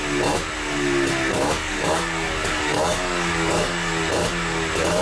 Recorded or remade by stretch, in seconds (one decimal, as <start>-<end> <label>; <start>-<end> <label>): 0.0-1.3 recorded; 1.3-3.9 remade; 3.9-5.0 recorded